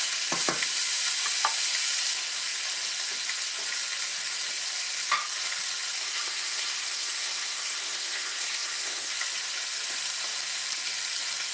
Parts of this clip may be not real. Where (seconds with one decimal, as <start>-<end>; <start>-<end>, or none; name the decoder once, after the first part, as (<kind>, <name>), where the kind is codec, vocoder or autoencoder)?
6.0-9.1 (codec, SNAC)